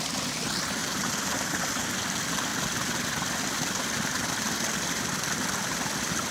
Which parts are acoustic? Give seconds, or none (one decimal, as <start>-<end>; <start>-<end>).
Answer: 0.0-0.8; 1.7-6.3